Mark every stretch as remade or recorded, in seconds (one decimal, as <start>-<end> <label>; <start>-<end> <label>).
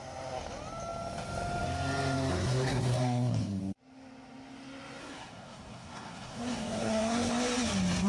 0.0-2.3 recorded; 2.3-3.6 remade; 3.6-5.0 recorded; 5.0-7.3 remade; 7.3-8.1 recorded